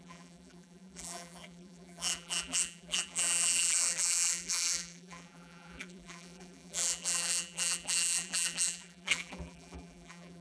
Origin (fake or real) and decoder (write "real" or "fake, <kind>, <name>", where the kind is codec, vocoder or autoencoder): fake, vocoder, BigVGAN v2